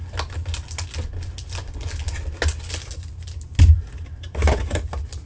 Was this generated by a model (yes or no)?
no